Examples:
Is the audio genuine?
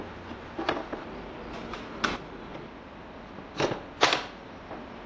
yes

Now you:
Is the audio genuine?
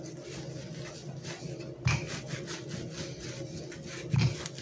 yes